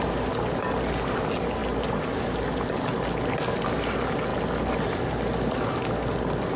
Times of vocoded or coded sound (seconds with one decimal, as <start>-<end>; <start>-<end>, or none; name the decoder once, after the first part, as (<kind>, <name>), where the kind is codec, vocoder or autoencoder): none